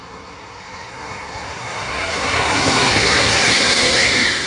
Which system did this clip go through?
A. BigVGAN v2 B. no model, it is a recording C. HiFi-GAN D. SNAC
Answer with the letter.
D